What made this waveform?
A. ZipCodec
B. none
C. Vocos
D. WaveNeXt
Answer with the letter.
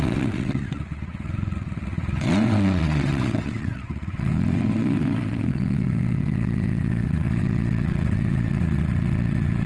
D